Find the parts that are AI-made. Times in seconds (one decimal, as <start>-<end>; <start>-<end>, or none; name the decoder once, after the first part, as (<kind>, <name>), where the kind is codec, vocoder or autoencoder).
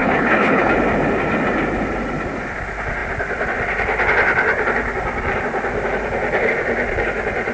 0.0-0.7 (codec, HILCodec)